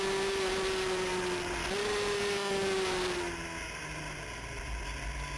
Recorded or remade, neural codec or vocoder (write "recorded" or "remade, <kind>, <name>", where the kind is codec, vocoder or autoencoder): recorded